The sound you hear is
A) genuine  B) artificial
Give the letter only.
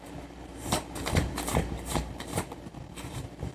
B